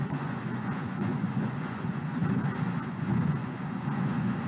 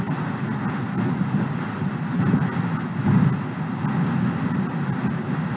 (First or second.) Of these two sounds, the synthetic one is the first